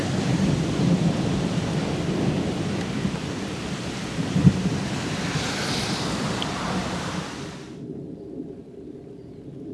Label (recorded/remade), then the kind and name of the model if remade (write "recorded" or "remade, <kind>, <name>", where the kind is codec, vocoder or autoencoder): recorded